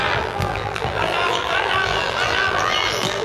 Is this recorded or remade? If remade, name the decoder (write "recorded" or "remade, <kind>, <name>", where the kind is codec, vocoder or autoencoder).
remade, vocoder, BigVGAN v2